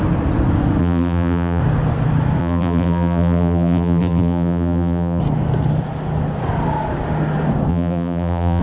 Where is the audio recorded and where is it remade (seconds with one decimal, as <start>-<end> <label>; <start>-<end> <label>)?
0.0-0.8 recorded; 0.8-1.6 remade; 1.6-2.4 recorded; 2.4-5.2 remade; 5.2-7.7 recorded; 7.7-8.6 remade